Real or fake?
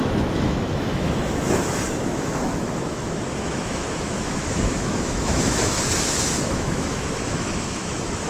fake